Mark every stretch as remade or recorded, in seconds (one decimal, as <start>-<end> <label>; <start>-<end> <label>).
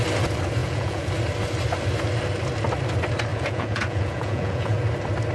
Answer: 0.0-0.6 recorded; 0.6-1.1 remade; 1.1-3.3 recorded; 3.3-4.8 remade; 4.8-5.3 recorded